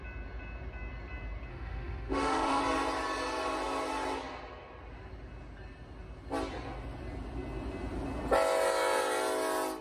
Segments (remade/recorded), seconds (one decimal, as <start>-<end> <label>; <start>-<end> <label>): 0.0-1.5 recorded; 1.5-2.6 remade; 2.6-9.8 recorded